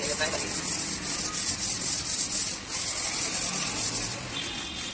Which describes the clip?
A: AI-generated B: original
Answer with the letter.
B